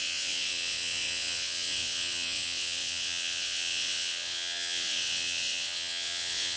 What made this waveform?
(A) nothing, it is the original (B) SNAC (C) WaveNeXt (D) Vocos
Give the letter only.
C